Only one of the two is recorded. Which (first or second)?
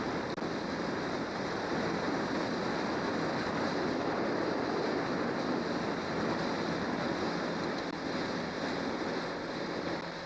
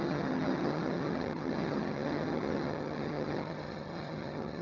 first